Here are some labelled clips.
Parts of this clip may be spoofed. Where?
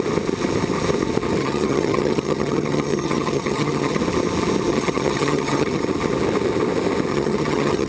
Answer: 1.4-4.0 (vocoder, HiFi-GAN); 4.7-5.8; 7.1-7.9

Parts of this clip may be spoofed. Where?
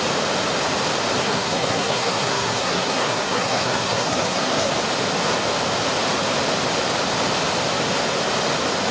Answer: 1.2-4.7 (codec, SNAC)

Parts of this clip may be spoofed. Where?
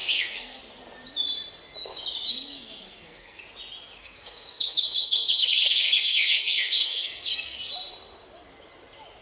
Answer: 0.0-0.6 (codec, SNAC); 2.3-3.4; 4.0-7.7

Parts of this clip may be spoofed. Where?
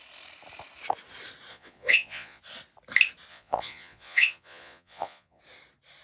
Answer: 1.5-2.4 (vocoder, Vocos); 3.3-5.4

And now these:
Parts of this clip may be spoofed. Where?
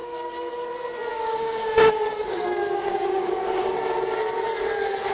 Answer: 0.0-0.5 (codec, DAC); 1.1-3.7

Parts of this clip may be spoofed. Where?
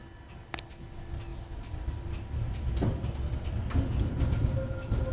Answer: none